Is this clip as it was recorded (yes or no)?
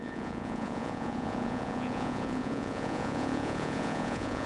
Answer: no